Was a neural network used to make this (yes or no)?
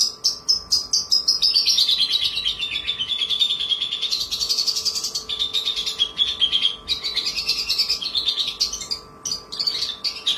no